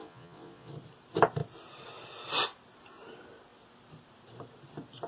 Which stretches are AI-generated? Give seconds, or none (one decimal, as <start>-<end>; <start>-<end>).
0.0-0.7